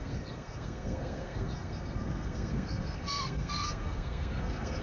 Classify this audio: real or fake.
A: fake